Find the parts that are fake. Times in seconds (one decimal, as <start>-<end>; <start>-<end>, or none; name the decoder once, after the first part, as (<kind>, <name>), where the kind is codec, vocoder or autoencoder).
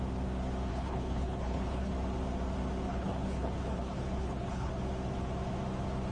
0.7-1.9 (codec, HILCodec); 2.9-4.7